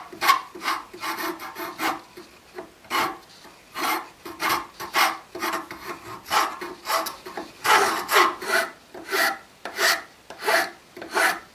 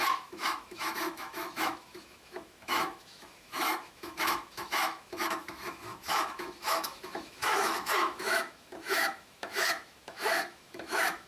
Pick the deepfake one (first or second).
second